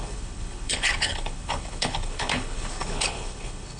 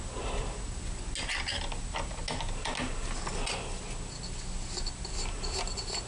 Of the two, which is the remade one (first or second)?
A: first